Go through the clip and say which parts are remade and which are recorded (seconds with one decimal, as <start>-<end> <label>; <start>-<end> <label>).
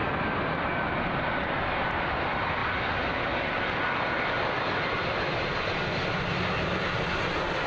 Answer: 0.0-7.7 recorded